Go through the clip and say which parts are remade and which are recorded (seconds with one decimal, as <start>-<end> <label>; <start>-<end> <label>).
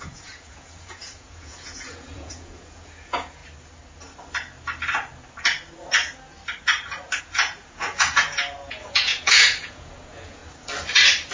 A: 0.0-3.4 remade; 3.4-7.2 recorded; 7.2-10.4 remade; 10.4-11.3 recorded